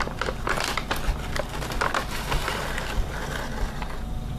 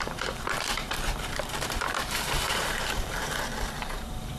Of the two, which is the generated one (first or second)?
second